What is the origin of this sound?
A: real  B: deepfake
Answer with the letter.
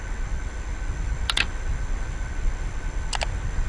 A